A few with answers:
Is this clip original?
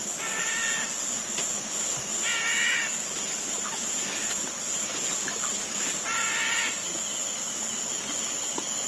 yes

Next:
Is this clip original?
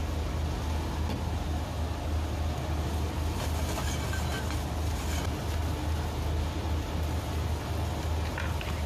yes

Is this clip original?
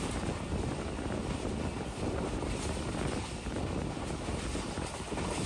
yes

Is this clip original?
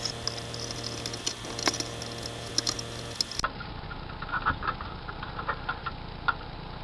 yes